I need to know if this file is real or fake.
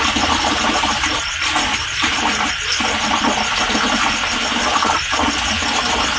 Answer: real